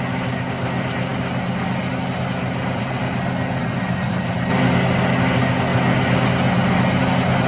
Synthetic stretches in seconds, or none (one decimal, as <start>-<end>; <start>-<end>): 3.6-4.5